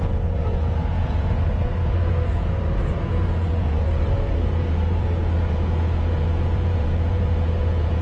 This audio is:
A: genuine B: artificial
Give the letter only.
B